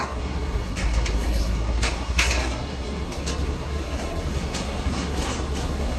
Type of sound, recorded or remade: remade